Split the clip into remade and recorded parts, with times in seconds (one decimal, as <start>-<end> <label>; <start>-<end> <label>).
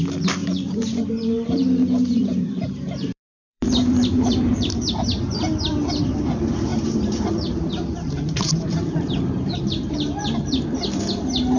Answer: 0.0-0.4 recorded; 0.4-4.9 remade; 4.9-6.7 recorded; 6.7-7.7 remade; 7.7-8.7 recorded; 8.7-11.2 remade; 11.2-11.6 recorded